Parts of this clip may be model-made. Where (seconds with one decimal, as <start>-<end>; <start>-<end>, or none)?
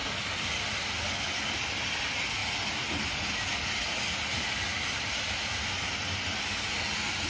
0.0-0.6; 4.7-5.4